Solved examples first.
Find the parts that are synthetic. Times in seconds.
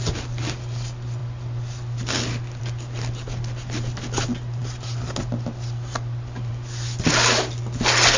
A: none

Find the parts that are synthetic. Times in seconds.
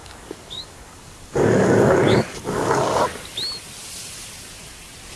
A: 0.0-3.0 (codec, DAC)